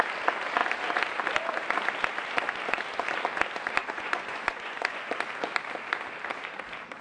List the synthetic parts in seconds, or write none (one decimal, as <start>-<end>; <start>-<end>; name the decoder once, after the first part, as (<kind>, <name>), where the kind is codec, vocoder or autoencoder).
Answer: 3.8-5.1 (vocoder, Vocos)